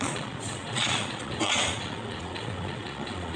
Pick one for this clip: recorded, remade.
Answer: remade